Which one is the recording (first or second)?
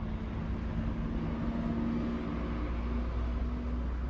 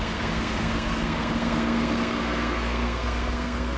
first